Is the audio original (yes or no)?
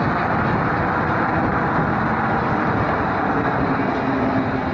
yes